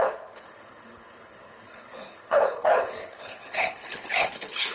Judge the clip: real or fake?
fake